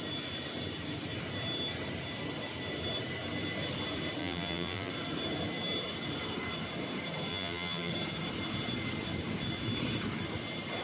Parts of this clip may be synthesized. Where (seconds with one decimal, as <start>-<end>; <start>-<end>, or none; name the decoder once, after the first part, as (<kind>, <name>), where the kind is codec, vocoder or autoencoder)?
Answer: 4.2-4.9 (vocoder, BigVGAN v2); 7.3-7.9